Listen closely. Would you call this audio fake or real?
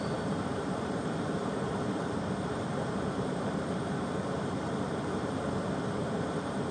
fake